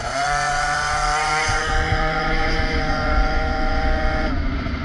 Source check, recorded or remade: remade